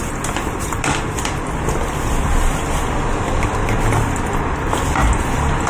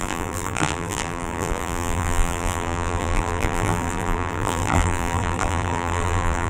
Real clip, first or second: first